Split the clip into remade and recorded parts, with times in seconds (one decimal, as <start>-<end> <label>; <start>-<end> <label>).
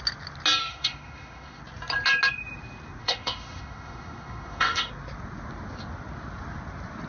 0.0-0.6 recorded; 0.6-1.6 remade; 1.6-3.0 recorded; 3.0-4.9 remade; 4.9-7.1 recorded